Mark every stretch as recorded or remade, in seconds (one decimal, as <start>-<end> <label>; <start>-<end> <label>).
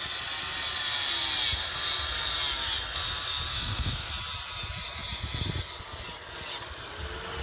0.0-3.5 recorded; 3.5-4.1 remade; 4.1-7.4 recorded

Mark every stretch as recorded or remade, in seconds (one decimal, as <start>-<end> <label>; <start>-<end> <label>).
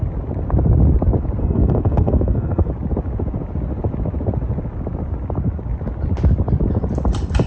0.0-1.4 recorded; 1.4-2.7 remade; 2.7-7.5 recorded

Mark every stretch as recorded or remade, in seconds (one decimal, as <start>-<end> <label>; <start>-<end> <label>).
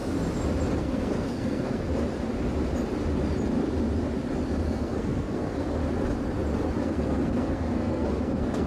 0.0-0.8 recorded; 0.8-1.9 remade; 1.9-4.7 recorded; 4.7-5.8 remade; 5.8-6.8 recorded; 6.8-8.7 remade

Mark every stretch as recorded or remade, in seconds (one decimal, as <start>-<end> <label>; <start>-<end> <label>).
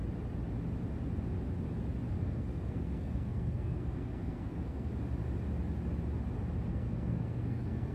0.0-2.2 recorded; 2.2-4.9 remade; 4.9-6.7 recorded; 6.7-7.9 remade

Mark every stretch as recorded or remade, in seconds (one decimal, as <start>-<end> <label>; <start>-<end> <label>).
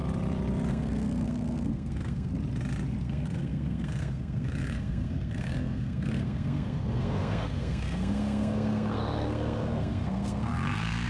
0.0-0.7 recorded; 0.7-2.3 remade; 2.3-3.0 recorded; 3.0-11.1 remade